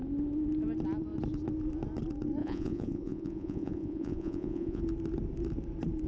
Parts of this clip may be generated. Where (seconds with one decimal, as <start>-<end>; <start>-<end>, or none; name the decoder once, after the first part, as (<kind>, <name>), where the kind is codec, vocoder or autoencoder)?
2.4-4.8 (vocoder, Vocos)